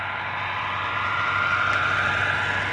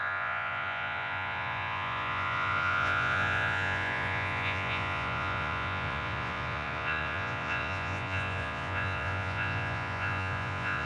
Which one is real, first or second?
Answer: first